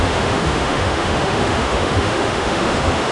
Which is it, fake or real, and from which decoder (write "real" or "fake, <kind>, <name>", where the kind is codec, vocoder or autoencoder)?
fake, autoencoder, DAC-VAE